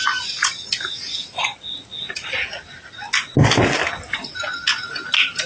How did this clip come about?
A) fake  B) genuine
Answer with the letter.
B